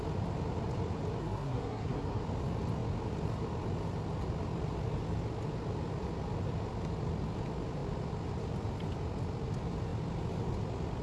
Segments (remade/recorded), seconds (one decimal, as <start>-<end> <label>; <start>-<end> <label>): 0.0-1.2 recorded; 1.2-2.2 remade; 2.2-11.0 recorded